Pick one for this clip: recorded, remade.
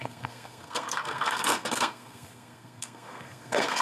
remade